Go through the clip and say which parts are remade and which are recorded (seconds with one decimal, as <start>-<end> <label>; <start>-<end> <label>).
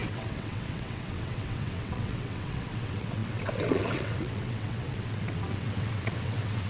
0.0-6.7 remade